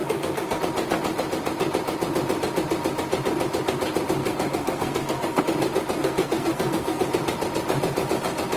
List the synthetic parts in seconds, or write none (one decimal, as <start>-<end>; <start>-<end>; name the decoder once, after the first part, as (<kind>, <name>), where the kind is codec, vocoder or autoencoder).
0.0-0.6 (codec, SNAC); 4.2-5.4; 6.0-7.0